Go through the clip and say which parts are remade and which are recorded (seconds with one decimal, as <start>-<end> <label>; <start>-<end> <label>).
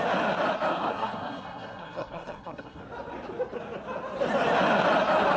0.0-0.7 recorded; 0.7-2.8 remade; 2.8-5.4 recorded